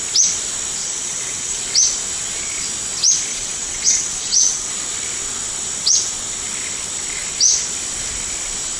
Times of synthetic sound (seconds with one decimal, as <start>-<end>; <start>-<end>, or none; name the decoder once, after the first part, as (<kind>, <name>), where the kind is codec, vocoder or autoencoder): 0.8-1.6 (vocoder, WaveNeXt); 3.3-4.7